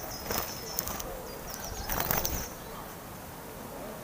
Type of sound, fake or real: real